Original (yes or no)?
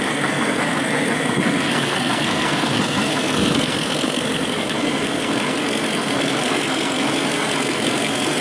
no